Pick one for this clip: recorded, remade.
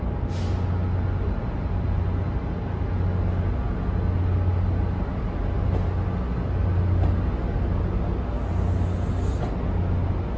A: recorded